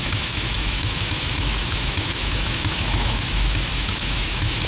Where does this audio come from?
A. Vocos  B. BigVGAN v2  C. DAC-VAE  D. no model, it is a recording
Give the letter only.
C